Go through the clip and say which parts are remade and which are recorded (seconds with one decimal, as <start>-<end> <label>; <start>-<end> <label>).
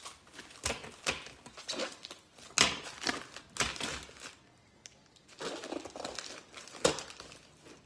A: 0.0-7.9 recorded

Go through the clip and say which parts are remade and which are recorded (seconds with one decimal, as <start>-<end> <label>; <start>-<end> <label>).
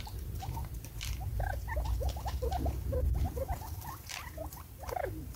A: 0.0-5.4 remade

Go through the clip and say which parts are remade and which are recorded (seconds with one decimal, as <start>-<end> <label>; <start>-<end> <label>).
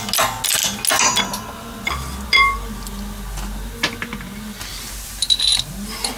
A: 0.0-4.7 recorded; 4.7-5.7 remade; 5.7-6.2 recorded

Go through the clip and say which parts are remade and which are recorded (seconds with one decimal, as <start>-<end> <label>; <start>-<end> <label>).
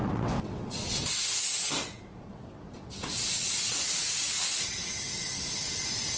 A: 0.0-0.8 remade; 0.8-2.3 recorded; 2.3-6.2 remade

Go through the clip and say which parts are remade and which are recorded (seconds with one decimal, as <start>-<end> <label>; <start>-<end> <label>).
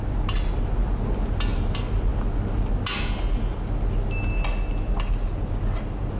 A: 0.0-6.2 recorded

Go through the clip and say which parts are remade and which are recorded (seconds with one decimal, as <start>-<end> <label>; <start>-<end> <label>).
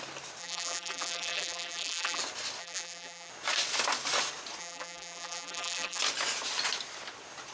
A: 0.0-0.4 recorded; 0.4-2.2 remade; 2.2-2.6 recorded; 2.6-3.3 remade; 3.3-4.6 recorded; 4.6-6.0 remade; 6.0-7.5 recorded